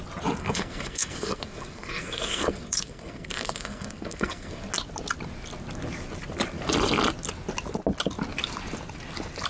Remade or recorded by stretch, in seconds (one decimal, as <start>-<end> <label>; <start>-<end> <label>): 0.0-0.4 recorded; 0.4-4.6 remade; 4.6-9.5 recorded